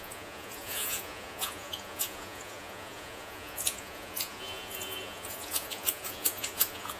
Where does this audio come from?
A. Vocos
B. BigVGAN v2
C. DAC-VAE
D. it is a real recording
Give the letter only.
A